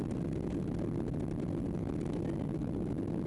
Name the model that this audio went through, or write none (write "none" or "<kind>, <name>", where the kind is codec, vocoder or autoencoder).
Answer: none